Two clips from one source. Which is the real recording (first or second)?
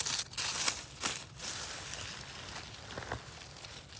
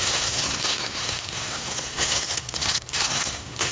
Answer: first